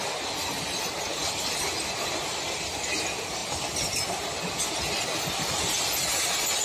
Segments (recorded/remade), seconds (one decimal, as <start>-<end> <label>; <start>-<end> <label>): 0.0-6.6 recorded